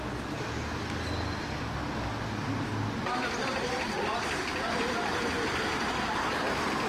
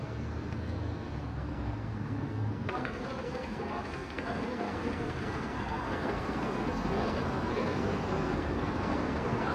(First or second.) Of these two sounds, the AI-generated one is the second